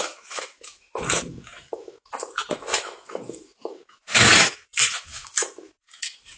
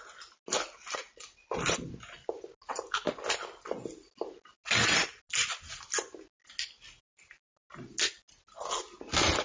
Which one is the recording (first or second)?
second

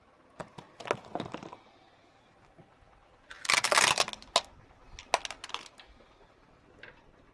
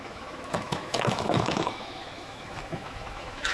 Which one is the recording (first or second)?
first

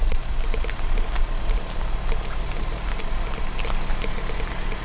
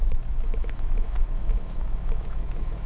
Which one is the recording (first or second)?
first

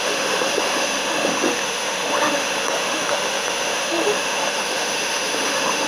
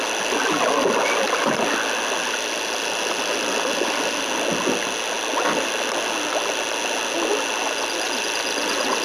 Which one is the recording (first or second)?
second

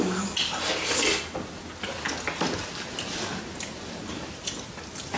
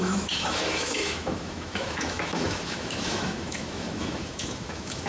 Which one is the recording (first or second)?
first